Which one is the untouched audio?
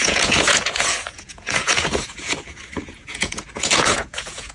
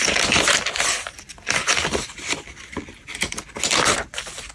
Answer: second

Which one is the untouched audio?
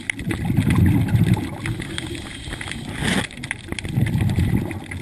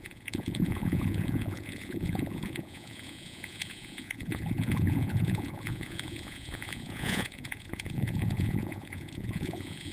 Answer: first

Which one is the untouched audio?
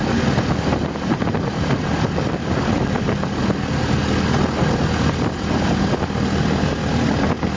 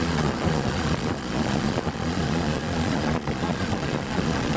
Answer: first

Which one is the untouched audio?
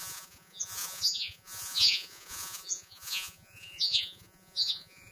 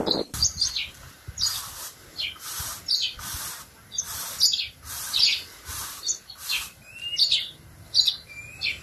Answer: second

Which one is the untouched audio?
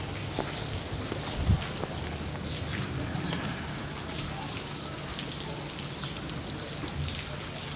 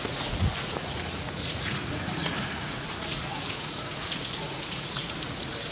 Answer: first